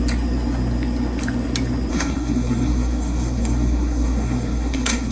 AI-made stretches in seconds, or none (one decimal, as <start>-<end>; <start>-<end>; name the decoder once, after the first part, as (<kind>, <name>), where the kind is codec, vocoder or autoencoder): 1.9-5.1 (codec, SNAC)